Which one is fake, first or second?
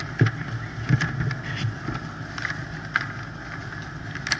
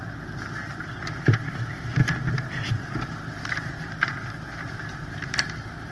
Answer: second